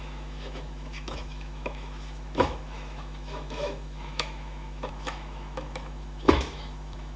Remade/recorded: remade